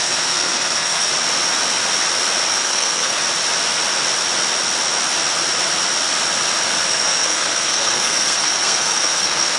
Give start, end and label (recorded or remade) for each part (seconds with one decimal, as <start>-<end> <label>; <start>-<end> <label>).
0.0-1.1 remade; 1.1-2.5 recorded; 2.5-3.2 remade; 3.2-6.9 recorded; 6.9-9.6 remade